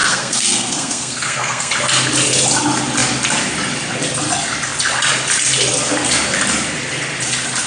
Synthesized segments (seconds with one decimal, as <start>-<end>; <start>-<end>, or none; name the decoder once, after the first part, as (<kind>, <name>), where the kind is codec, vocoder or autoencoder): 0.0-1.7 (codec, SNAC)